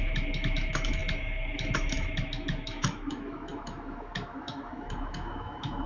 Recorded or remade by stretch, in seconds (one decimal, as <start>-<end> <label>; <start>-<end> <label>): 0.0-5.9 remade